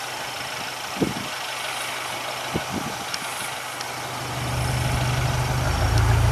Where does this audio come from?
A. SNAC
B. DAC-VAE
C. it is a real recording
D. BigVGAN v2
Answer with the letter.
C